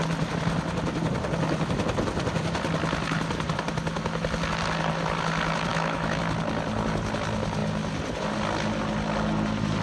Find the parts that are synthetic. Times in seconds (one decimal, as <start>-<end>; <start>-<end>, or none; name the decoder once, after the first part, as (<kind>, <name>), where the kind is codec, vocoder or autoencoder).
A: 5.7-6.2 (autoencoder, DAC-VAE)